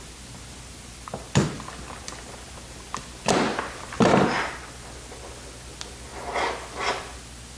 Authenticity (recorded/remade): recorded